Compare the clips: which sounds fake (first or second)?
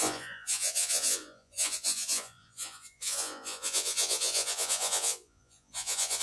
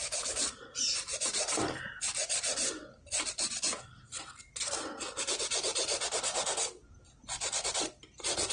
first